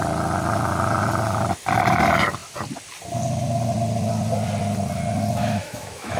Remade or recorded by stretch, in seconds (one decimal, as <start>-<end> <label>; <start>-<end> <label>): 0.0-5.4 recorded; 5.4-6.2 remade